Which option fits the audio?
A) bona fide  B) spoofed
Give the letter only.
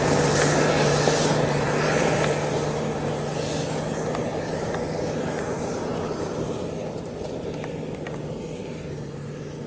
A